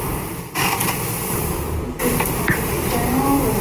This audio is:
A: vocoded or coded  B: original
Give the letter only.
A